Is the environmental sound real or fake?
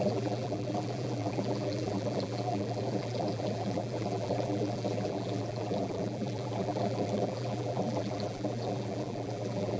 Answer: fake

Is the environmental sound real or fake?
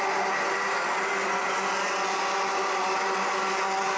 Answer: real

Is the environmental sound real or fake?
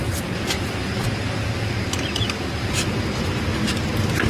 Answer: real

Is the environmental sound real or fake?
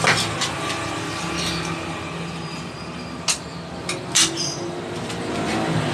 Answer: real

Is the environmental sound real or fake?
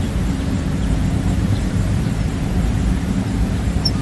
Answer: fake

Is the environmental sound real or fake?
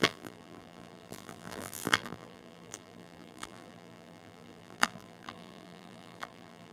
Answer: fake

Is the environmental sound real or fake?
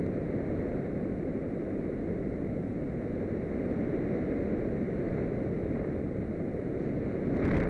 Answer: real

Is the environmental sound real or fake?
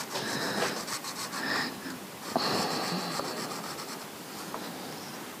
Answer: real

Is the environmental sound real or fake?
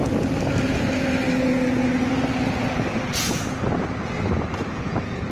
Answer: real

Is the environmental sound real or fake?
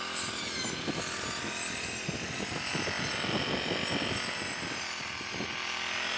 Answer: real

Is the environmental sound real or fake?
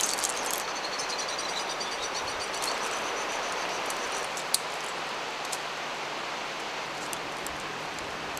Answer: fake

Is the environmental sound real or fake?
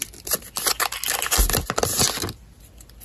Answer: real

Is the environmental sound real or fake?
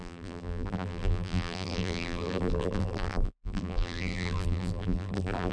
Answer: fake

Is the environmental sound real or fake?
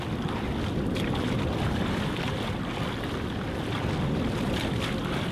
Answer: real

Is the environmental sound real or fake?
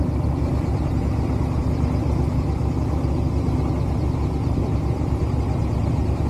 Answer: real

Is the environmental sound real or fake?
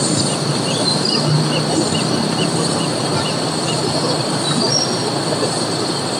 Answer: real